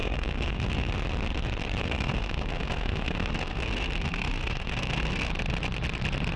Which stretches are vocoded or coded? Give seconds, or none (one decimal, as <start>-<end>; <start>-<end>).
0.0-0.9; 1.8-5.3